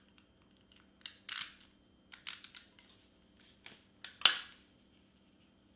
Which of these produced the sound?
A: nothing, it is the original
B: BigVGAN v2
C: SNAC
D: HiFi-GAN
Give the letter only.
A